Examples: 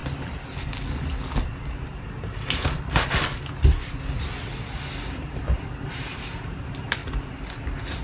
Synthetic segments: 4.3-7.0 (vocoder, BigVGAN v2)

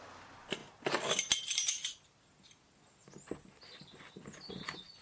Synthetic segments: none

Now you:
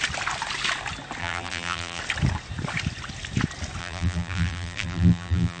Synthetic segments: 1.2-2.0 (vocoder, BigVGAN v2); 3.8-5.6